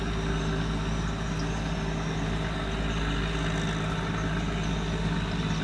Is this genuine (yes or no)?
yes